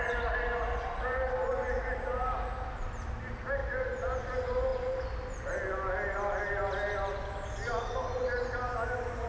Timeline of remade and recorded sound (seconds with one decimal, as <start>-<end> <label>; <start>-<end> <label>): 0.0-9.3 recorded